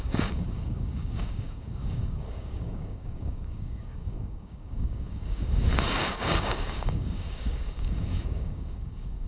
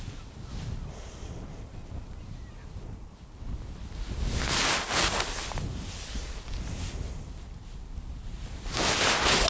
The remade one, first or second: first